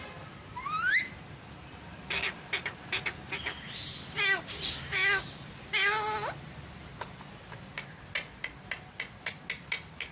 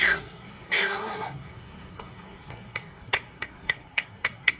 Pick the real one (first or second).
first